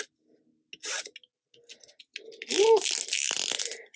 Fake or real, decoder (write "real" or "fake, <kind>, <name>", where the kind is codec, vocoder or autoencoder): real